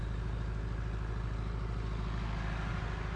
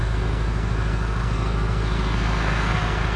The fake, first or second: second